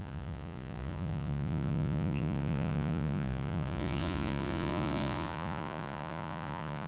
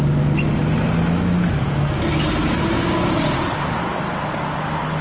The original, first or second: second